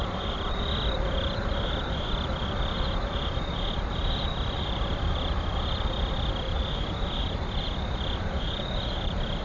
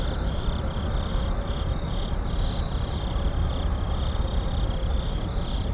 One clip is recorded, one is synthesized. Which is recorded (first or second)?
second